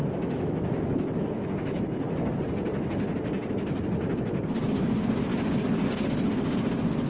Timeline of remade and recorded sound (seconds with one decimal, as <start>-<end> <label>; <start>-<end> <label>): 0.0-2.3 remade; 2.3-7.1 recorded

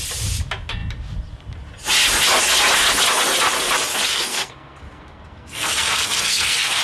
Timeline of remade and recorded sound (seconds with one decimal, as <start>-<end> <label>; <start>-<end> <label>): 0.0-4.1 recorded; 4.1-6.8 remade

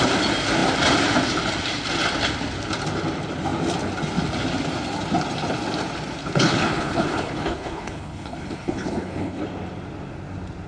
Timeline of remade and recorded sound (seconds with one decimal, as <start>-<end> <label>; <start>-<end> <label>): 0.0-6.2 recorded; 6.2-9.4 remade; 9.4-10.7 recorded

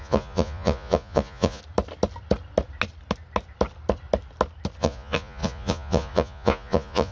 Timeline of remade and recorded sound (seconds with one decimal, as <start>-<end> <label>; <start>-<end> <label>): 0.0-1.6 remade; 1.6-4.8 recorded; 4.8-7.1 remade

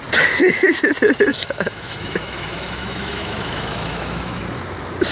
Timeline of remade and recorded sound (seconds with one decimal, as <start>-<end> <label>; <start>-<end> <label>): 0.0-0.4 recorded; 0.4-0.9 remade; 0.9-1.3 recorded; 1.3-4.4 remade; 4.4-5.1 recorded